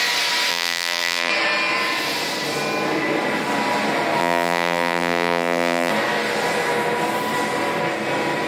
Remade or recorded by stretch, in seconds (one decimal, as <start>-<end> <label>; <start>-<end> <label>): 0.0-0.5 recorded; 0.5-1.3 remade; 1.3-4.2 recorded; 4.2-5.9 remade; 5.9-8.5 recorded